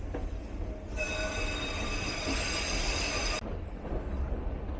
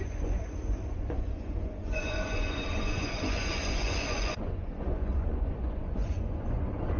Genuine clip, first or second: first